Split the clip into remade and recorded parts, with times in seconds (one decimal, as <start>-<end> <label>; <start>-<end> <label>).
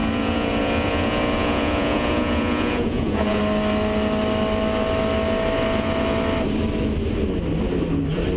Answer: 0.0-3.4 remade; 3.4-8.4 recorded